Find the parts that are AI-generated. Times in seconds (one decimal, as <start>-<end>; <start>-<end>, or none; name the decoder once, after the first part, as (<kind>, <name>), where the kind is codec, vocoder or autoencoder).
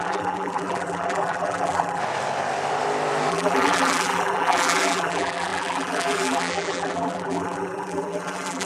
0.0-2.0 (vocoder, BigVGAN v2); 3.3-8.7